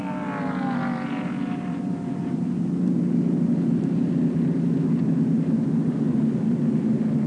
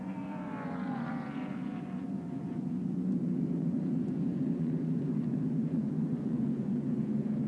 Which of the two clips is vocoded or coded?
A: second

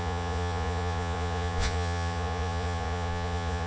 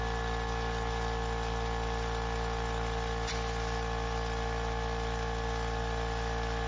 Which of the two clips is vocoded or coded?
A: first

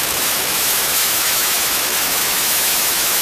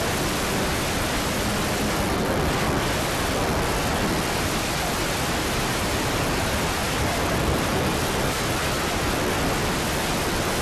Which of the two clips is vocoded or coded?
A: first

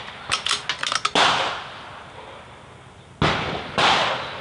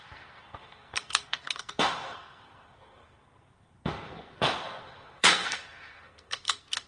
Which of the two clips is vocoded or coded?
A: second